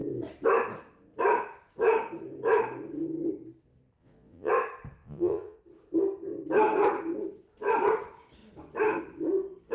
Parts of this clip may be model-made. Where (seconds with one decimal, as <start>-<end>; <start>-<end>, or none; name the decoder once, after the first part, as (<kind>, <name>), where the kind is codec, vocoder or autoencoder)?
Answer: 4.0-4.5 (vocoder, Vocos); 5.0-5.6

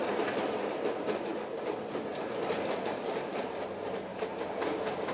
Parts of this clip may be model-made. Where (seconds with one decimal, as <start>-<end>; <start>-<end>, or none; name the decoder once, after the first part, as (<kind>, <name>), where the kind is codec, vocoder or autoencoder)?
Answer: 0.0-1.3 (vocoder, BigVGAN v2); 2.2-4.1

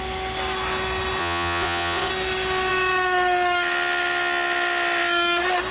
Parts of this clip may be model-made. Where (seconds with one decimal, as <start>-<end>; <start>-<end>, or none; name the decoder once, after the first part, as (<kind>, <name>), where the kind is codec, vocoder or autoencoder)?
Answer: 1.2-2.1 (vocoder, Vocos)